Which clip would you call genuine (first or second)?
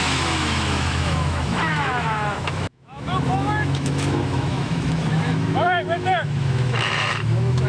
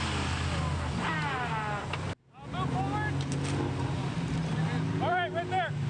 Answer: second